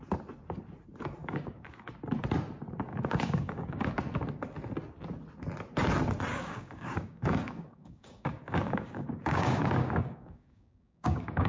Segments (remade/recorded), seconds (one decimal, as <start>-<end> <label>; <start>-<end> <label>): 0.0-1.2 recorded; 1.2-1.9 remade; 1.9-2.9 recorded; 2.9-3.9 remade; 3.9-6.3 recorded; 6.3-11.5 remade